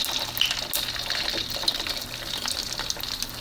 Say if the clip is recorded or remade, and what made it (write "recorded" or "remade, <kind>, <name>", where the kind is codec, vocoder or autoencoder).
recorded